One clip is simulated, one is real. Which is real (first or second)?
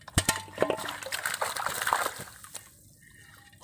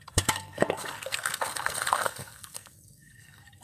first